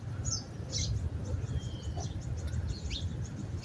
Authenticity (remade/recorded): recorded